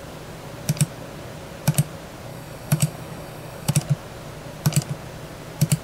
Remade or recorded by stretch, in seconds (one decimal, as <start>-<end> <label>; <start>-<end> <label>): 0.0-2.3 recorded; 2.3-3.7 remade; 3.7-5.8 recorded